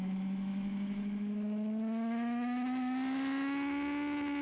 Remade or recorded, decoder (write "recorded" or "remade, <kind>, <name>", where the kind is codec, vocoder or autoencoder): remade, autoencoder, DAC-VAE